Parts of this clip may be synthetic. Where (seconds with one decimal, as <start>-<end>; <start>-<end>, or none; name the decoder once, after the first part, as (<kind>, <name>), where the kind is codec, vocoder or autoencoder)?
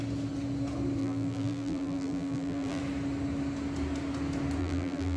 1.0-2.8 (vocoder, BigVGAN v2); 4.6-5.2